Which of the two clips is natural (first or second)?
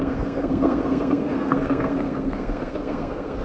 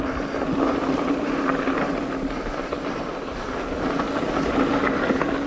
second